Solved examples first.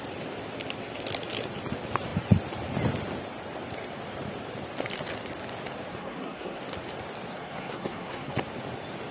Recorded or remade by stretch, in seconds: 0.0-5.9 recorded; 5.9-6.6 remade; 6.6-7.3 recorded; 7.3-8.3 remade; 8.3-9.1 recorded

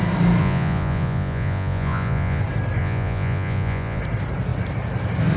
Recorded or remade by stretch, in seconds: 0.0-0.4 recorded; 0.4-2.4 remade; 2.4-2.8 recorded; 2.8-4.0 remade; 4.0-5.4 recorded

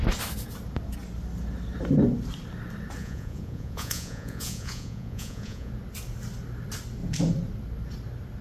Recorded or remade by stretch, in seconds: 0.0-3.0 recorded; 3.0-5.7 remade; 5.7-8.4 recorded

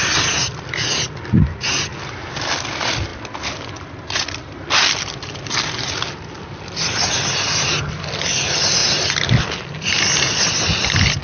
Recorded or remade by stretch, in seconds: 0.0-11.2 recorded

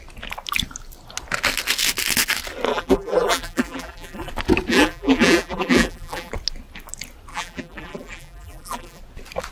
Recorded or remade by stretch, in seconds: 0.0-2.7 recorded; 2.7-4.3 remade; 4.3-4.7 recorded; 4.7-6.3 remade; 6.3-7.3 recorded; 7.3-9.0 remade; 9.0-9.5 recorded